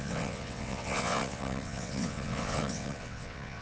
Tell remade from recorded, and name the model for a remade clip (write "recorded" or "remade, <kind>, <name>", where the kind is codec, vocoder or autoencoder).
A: remade, vocoder, WaveNeXt